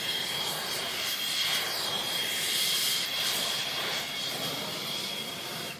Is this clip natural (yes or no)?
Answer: no